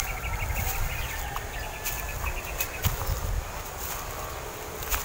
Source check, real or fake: real